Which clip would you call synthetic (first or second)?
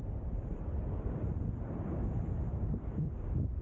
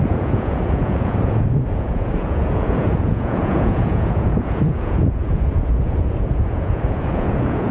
second